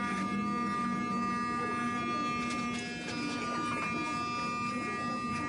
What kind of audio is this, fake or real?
real